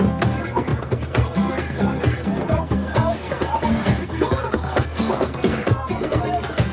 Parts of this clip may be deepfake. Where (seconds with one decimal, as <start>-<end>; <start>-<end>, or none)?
0.0-6.7

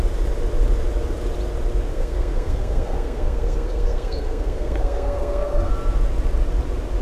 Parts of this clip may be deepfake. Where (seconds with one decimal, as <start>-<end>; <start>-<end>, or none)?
1.9-5.7

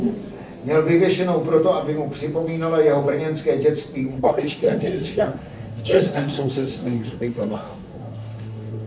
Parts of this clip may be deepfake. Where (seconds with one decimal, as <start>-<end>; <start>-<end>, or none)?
4.1-8.9

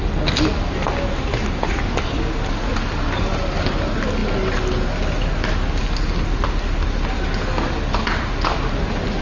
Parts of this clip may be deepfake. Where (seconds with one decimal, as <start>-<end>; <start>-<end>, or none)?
none

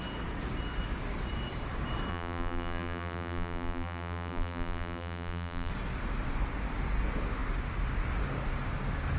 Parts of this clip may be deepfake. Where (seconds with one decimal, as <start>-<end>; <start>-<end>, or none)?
2.1-5.7

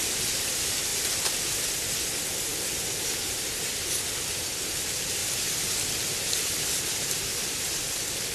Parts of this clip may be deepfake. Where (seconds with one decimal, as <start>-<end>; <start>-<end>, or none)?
none

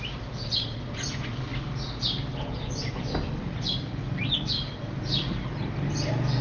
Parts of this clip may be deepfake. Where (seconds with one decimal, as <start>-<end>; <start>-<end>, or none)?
none

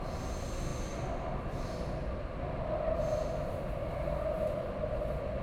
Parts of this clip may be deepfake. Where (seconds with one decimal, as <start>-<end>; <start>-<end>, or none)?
none